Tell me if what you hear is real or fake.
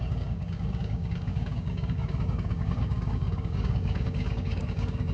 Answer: fake